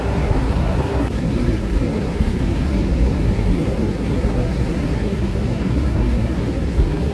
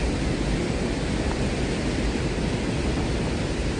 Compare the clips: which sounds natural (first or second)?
second